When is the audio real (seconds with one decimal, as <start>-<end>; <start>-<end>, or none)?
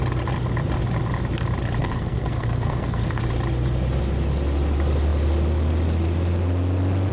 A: 0.0-1.8; 3.2-7.1